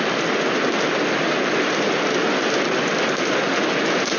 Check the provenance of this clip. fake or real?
real